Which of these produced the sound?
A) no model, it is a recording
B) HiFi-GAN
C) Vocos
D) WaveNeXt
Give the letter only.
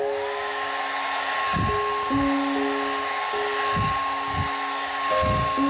A